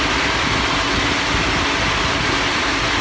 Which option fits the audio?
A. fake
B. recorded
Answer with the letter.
B